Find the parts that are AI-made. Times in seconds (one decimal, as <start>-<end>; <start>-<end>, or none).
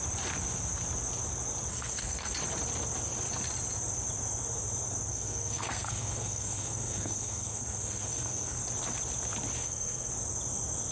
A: 1.7-2.3; 5.1-8.6; 9.6-10.1